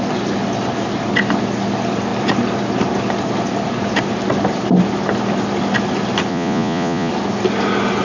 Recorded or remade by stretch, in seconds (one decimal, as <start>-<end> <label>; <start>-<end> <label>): 0.0-6.3 recorded; 6.3-7.1 remade; 7.1-8.0 recorded